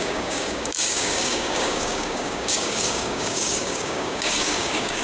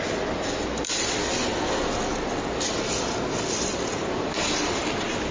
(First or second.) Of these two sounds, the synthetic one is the first